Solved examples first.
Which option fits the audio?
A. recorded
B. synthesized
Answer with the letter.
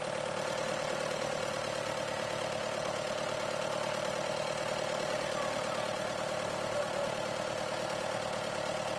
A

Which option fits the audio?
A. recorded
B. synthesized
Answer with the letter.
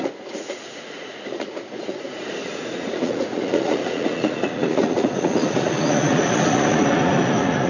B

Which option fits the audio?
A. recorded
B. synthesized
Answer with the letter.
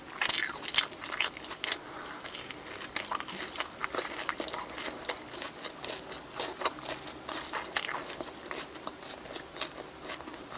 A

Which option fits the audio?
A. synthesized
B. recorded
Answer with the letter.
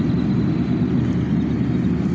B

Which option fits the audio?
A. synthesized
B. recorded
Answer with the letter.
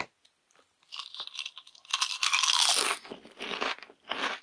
B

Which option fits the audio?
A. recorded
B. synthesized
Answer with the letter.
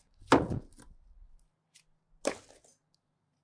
A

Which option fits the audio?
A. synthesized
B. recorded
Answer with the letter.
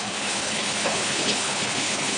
A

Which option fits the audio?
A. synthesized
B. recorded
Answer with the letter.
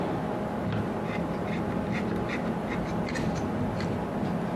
B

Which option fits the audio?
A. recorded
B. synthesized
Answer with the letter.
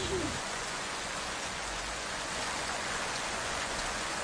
B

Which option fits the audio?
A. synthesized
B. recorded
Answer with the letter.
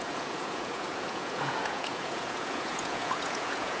A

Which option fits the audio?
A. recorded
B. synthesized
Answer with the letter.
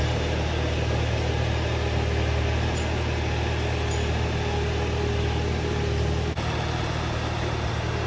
A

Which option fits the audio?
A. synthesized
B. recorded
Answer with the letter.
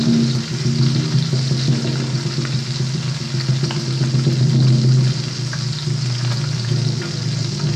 B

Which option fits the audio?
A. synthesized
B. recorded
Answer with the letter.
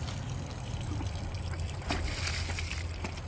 B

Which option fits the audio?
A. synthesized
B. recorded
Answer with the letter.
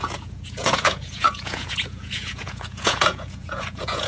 A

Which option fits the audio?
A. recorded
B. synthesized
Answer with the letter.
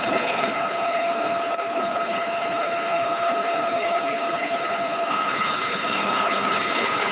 B